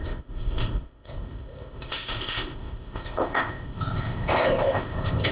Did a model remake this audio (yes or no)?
yes